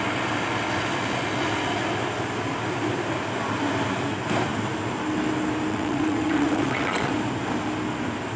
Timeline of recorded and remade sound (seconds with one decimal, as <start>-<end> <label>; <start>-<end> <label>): 0.0-5.7 recorded; 5.7-7.1 remade; 7.1-8.4 recorded